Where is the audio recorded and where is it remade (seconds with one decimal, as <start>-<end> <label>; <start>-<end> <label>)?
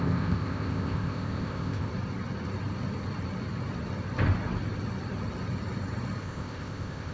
0.0-1.9 remade; 1.9-6.2 recorded; 6.2-7.1 remade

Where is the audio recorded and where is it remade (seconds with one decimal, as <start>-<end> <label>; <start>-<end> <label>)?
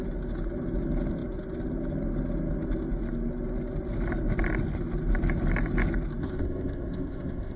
0.0-6.2 recorded; 6.2-7.6 remade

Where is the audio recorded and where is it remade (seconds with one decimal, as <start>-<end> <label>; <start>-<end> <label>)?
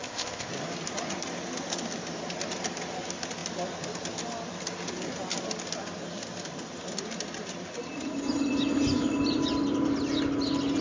0.0-0.5 remade; 0.5-10.8 recorded